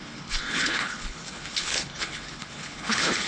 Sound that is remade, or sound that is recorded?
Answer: remade